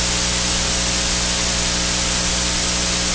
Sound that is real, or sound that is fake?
real